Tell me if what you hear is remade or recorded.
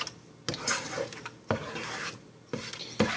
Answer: recorded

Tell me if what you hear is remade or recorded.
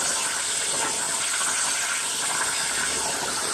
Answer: recorded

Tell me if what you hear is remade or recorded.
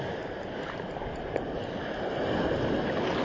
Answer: recorded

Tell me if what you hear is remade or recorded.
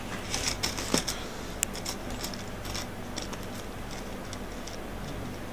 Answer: recorded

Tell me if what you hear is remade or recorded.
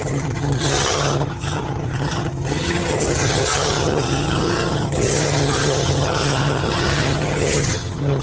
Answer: remade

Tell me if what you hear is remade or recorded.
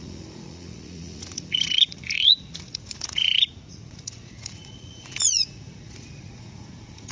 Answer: remade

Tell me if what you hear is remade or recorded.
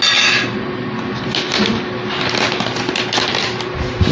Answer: recorded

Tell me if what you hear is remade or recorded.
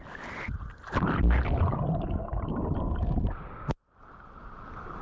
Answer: recorded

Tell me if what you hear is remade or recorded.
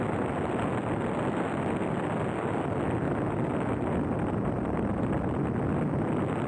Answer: recorded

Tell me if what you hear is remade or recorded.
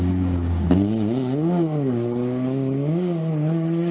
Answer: remade